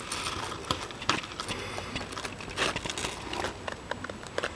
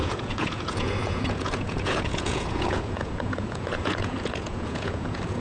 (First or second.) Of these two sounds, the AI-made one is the second